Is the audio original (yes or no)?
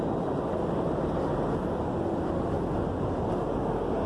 yes